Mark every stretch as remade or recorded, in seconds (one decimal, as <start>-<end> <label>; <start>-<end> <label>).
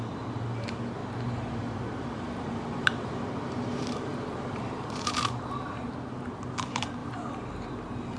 0.0-1.0 recorded; 1.0-5.9 remade; 5.9-7.0 recorded; 7.0-8.2 remade